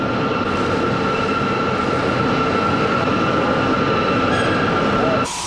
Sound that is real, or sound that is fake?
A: real